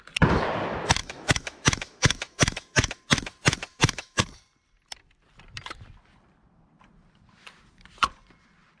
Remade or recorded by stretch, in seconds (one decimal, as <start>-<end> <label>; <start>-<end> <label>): 0.0-1.0 recorded; 1.0-2.9 remade; 2.9-3.7 recorded; 3.7-4.2 remade; 4.2-8.8 recorded